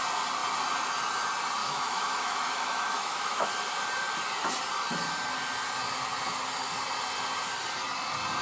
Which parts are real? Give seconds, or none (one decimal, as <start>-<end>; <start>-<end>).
0.0-1.6; 3.5-8.4